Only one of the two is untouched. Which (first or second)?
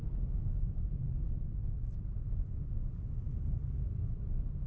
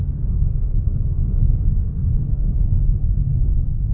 first